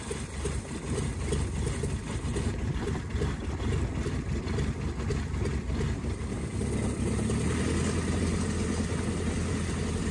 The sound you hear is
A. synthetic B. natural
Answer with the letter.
B